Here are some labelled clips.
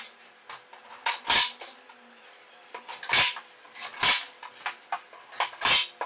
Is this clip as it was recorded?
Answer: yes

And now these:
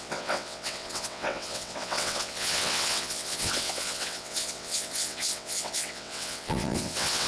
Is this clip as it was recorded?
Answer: no